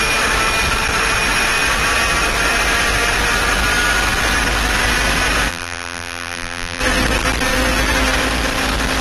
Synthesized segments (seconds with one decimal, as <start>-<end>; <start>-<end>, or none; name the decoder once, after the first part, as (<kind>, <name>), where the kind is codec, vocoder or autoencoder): 5.5-6.8 (vocoder, BigVGAN v2)